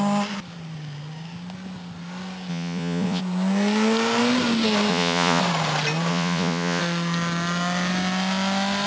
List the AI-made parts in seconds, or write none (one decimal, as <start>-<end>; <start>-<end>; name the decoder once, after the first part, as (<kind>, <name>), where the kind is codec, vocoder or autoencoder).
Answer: 2.5-3.2 (vocoder, Vocos); 4.9-5.4; 6.1-6.8